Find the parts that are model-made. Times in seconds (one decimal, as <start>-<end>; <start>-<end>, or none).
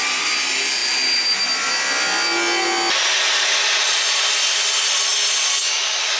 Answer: none